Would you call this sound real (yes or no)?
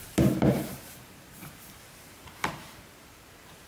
no